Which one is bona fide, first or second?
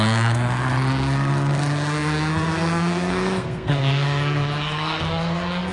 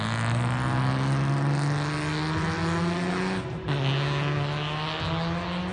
second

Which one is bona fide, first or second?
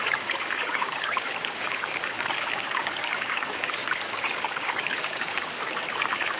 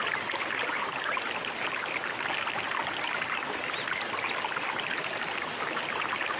second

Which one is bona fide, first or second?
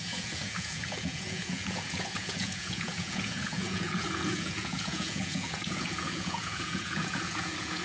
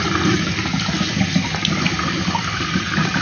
second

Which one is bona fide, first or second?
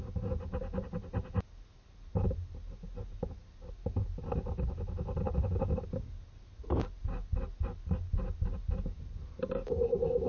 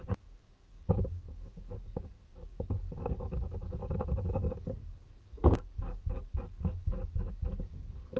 first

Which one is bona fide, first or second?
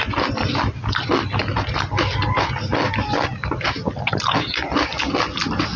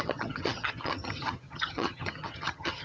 first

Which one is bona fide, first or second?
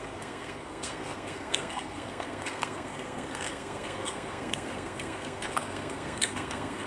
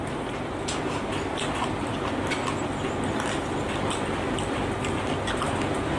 second